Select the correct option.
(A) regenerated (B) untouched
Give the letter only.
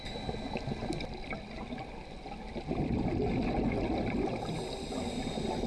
B